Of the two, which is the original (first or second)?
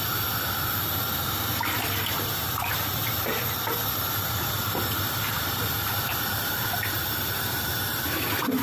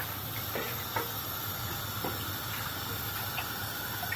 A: second